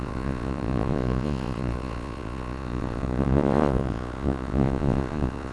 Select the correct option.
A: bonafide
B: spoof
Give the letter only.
B